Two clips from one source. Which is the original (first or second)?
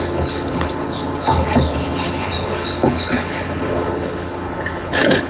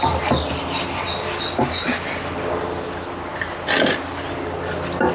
second